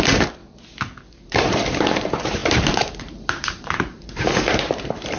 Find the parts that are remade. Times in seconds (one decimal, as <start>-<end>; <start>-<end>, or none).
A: 0.0-0.4; 1.1-5.2

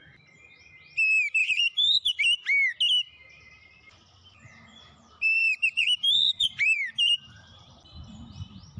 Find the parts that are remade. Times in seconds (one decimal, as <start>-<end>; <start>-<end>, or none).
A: 1.4-2.2; 4.7-7.8

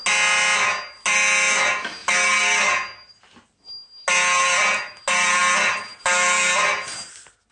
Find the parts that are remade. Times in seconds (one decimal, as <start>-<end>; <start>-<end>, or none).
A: none

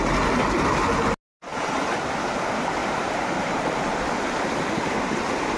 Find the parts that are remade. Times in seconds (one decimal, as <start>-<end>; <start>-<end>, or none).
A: 2.8-4.0